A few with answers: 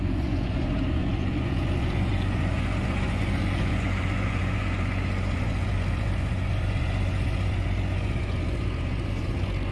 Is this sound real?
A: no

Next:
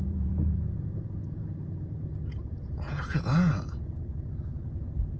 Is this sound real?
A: no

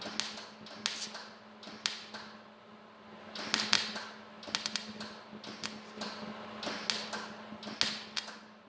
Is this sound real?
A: yes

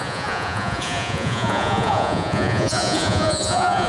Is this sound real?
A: no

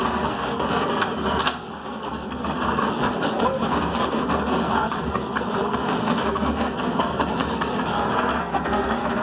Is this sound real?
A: no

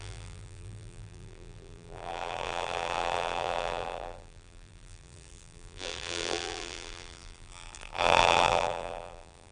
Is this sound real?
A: no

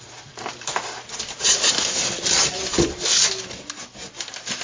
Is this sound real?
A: yes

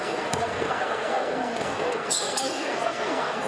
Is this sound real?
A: no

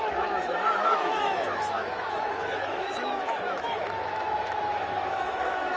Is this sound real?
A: no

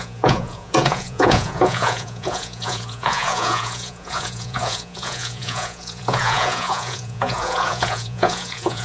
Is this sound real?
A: no